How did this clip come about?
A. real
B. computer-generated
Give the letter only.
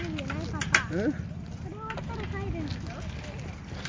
A